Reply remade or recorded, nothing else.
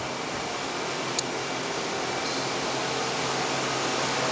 recorded